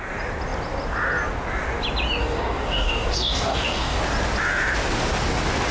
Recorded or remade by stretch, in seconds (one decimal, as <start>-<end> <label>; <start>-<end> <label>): 0.0-2.2 recorded; 2.2-4.0 remade; 4.0-5.7 recorded